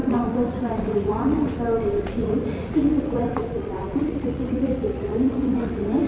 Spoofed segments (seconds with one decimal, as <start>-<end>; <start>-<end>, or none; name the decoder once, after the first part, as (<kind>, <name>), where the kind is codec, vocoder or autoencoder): 0.0-1.6 (vocoder, Vocos); 2.0-6.1